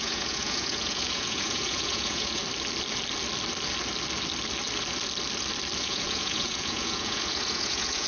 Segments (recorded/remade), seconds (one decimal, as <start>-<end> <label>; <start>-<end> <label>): 0.0-2.4 remade; 2.4-5.8 recorded; 5.8-8.1 remade